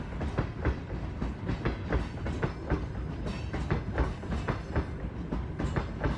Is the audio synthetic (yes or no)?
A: no